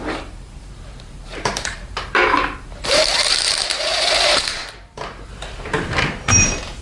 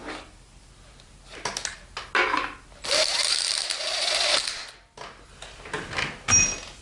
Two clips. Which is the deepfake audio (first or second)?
first